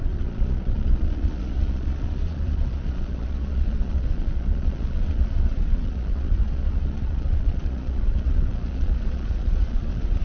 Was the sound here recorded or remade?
remade